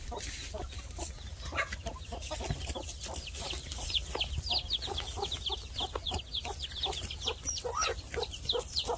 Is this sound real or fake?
real